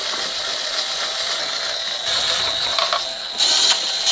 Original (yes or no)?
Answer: yes